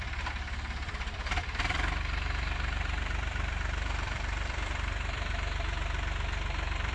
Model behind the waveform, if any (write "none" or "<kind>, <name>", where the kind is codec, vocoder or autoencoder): vocoder, BigVGAN v2